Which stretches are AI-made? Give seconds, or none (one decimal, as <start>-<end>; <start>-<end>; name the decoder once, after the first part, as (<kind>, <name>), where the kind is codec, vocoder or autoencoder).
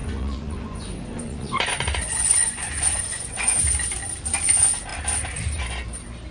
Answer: 0.0-3.6 (vocoder, Vocos)